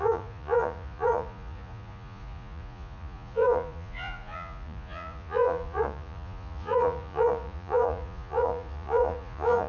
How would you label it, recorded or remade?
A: remade